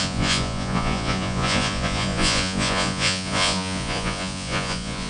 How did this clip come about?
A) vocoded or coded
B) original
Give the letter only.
A